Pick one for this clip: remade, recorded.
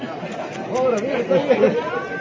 recorded